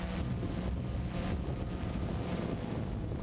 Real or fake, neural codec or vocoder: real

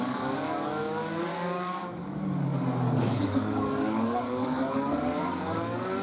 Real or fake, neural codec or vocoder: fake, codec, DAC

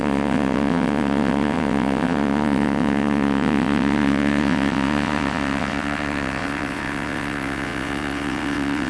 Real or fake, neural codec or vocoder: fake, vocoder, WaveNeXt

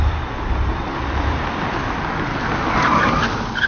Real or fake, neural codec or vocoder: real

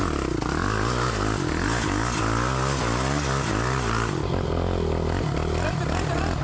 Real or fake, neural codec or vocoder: real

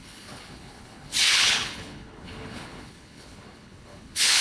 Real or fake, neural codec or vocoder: fake, codec, HILCodec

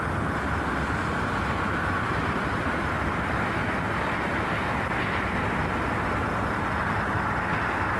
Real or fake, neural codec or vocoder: real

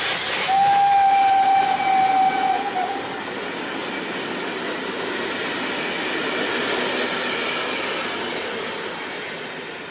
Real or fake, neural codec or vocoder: real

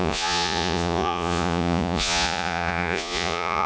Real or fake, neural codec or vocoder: fake, vocoder, Vocos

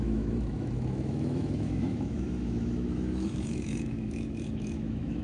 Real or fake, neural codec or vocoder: fake, autoencoder, DAC-VAE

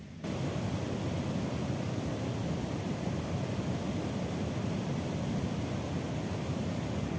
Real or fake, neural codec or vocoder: real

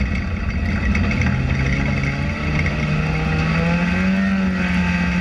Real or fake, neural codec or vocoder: real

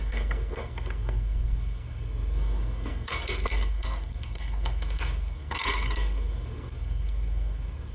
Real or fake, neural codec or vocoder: fake, codec, SNAC